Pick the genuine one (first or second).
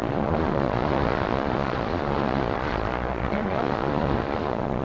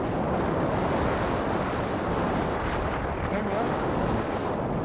second